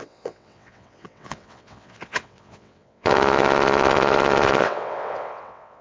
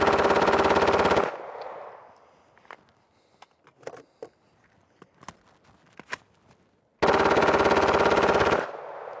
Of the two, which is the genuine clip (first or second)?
second